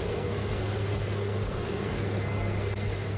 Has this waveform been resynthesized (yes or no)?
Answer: yes